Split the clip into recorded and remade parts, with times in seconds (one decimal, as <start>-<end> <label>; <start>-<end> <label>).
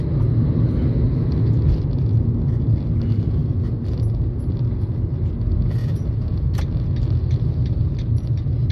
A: 0.0-5.8 recorded; 5.8-6.6 remade; 6.6-8.7 recorded